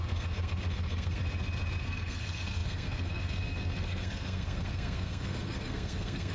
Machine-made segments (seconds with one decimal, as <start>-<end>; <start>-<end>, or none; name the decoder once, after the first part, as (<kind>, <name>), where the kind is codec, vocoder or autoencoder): 0.0-1.2 (codec, SNAC); 1.8-6.3